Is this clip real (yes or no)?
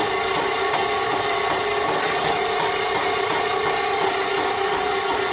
yes